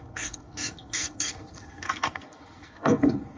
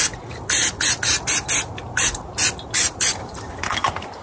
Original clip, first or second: second